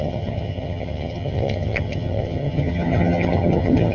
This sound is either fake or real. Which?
fake